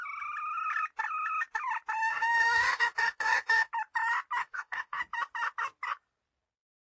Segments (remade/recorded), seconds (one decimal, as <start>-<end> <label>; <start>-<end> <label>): 0.0-2.1 recorded; 2.1-3.7 remade; 3.7-4.4 recorded; 4.4-5.0 remade; 5.0-6.9 recorded